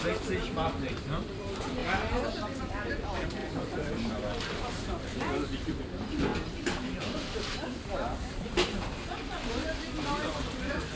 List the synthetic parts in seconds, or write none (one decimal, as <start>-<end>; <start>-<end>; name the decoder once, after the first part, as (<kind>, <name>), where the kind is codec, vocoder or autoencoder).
0.0-1.8 (vocoder, BigVGAN v2); 2.6-6.3; 7.0-9.6; 10.4-11.0